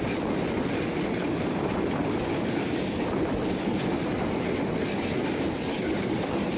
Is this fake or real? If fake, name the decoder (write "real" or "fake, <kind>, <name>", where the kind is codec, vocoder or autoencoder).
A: real